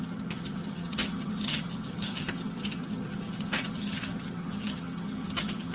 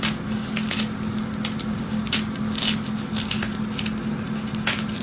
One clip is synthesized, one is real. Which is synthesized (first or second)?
first